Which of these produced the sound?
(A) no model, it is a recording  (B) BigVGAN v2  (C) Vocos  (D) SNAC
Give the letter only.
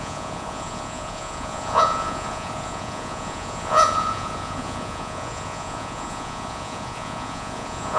C